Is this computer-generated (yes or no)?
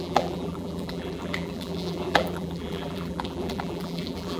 yes